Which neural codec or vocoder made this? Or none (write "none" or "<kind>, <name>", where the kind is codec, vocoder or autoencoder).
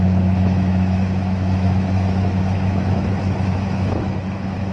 autoencoder, DAC-VAE